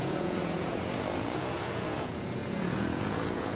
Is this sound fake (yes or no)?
yes